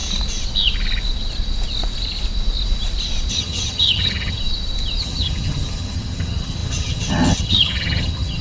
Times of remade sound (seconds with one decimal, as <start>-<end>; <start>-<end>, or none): 3.3-4.4; 5.0-8.4